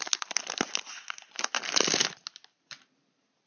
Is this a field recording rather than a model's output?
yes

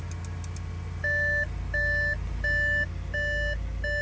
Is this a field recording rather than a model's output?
yes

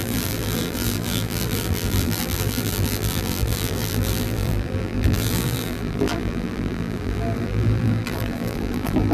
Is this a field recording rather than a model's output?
no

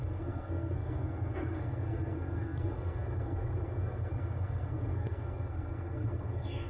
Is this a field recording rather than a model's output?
no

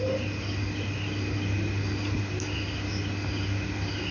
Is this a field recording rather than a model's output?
yes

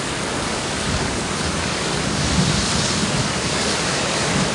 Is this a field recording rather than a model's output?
no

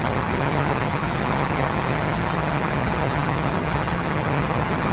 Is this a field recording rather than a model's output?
no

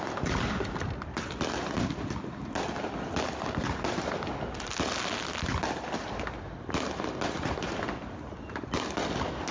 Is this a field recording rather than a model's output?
yes